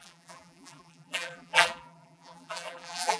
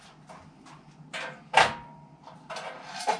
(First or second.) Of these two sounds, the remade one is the first